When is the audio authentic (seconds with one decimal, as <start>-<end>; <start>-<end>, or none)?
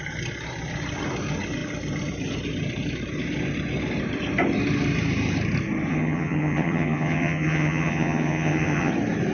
0.0-5.9; 8.9-9.3